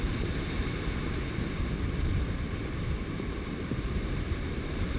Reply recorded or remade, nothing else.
recorded